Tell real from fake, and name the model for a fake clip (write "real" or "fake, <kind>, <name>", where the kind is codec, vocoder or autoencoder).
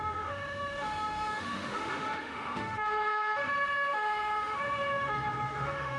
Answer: fake, autoencoder, DAC-VAE